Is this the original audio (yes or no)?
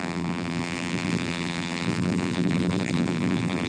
no